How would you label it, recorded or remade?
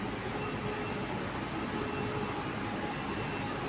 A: recorded